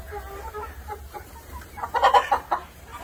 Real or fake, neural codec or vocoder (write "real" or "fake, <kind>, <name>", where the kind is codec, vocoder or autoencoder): fake, vocoder, BigVGAN v2